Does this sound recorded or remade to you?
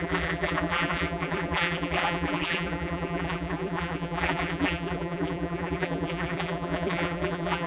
remade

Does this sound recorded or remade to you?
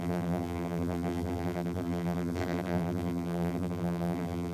remade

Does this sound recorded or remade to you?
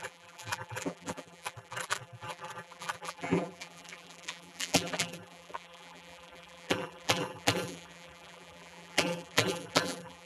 remade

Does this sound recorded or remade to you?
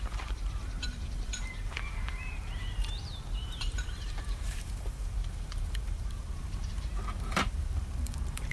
remade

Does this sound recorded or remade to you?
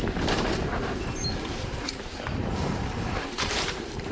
remade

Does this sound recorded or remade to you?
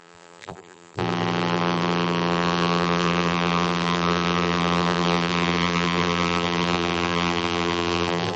remade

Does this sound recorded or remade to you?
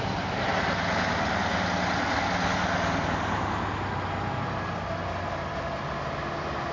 recorded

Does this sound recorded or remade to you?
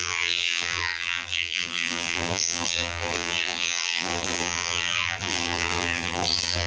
remade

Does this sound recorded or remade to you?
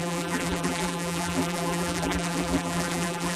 remade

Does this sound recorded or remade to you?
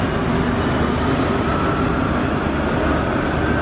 recorded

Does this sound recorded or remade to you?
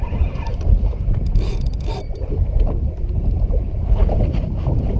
remade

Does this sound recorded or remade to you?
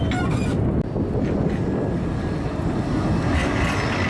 recorded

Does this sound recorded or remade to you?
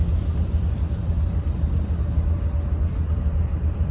remade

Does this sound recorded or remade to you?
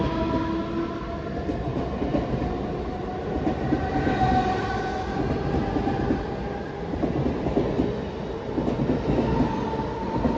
recorded